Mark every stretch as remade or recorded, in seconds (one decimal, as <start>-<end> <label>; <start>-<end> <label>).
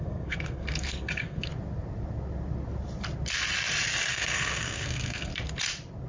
0.0-1.5 remade; 1.5-4.1 recorded; 4.1-5.3 remade; 5.3-6.1 recorded